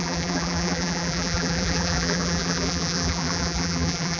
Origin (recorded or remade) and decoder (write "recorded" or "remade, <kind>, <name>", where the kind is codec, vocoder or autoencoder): remade, vocoder, BigVGAN v2